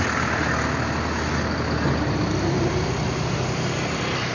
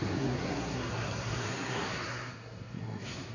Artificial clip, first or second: second